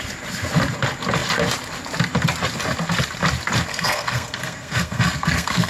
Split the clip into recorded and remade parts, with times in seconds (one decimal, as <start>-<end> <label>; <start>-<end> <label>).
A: 0.0-3.7 recorded; 3.7-5.7 remade